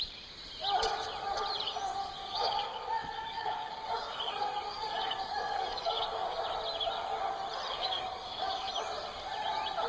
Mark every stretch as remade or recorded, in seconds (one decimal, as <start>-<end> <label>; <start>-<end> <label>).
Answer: 0.0-2.2 recorded; 2.2-6.4 remade; 6.4-7.7 recorded; 7.7-8.7 remade; 8.7-9.9 recorded

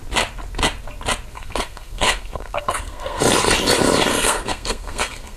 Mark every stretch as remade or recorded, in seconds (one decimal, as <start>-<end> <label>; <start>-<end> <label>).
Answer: 0.0-1.3 recorded; 1.3-3.2 remade; 3.2-4.1 recorded; 4.1-5.4 remade

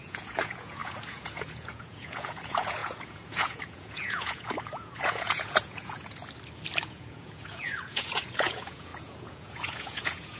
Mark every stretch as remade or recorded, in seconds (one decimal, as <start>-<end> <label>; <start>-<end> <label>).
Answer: 0.0-6.2 remade; 6.2-6.8 recorded; 6.8-10.4 remade

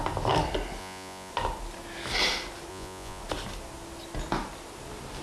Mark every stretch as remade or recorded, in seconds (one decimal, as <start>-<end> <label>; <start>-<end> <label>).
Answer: 0.0-0.8 recorded; 0.8-1.3 remade; 1.3-2.7 recorded; 2.7-3.2 remade; 3.2-5.2 recorded